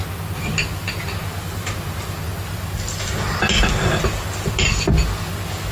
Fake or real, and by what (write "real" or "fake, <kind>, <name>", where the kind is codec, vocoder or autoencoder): real